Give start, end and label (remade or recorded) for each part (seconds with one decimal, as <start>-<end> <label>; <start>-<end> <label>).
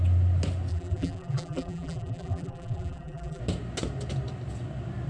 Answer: 0.0-0.7 recorded; 0.7-3.4 remade; 3.4-5.1 recorded